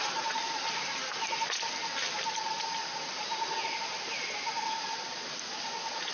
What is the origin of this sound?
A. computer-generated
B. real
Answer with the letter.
B